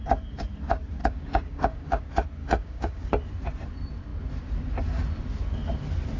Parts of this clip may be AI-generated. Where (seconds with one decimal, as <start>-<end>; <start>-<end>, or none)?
1.0-2.0; 2.4-3.1